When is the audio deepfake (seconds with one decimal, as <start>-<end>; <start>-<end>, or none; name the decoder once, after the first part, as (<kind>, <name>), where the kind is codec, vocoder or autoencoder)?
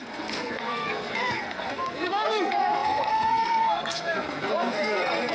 0.0-5.3 (codec, SNAC)